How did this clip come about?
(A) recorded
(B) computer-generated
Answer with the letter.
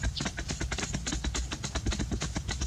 A